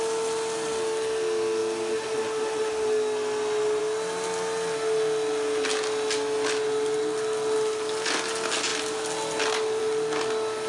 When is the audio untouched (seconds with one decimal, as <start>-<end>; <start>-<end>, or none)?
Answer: 0.0-10.7